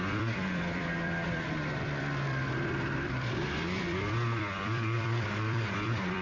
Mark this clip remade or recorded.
remade